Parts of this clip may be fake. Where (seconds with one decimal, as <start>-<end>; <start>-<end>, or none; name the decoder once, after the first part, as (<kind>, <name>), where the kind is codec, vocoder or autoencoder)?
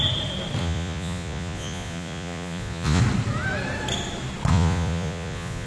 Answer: 0.6-3.0 (vocoder, Vocos); 4.5-5.7